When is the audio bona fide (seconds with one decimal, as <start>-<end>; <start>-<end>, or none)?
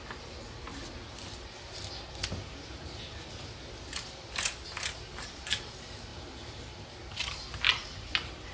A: 0.0-6.1; 6.7-7.8